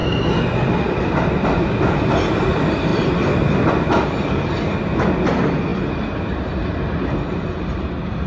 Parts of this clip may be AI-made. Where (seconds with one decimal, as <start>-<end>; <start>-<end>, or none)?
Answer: none